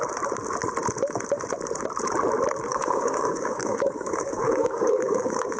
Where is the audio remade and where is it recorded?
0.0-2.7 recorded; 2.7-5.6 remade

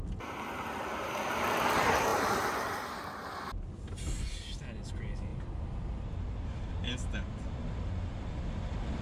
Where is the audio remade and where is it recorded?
0.0-9.0 recorded